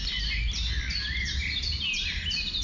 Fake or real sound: real